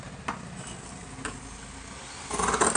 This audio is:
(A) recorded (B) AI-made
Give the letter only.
A